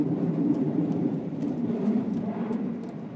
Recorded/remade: remade